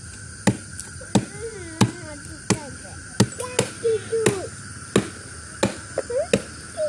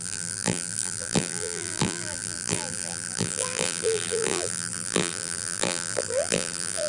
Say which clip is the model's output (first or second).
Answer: second